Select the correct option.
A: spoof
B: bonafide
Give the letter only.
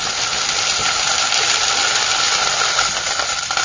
B